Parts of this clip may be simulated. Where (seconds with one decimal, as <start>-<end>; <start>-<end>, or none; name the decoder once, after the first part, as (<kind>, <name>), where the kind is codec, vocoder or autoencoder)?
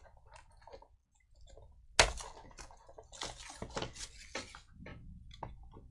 none